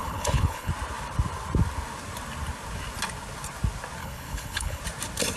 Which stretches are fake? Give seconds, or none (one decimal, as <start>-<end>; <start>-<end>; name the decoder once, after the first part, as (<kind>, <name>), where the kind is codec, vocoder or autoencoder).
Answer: 0.0-0.7 (codec, HILCodec); 4.0-4.8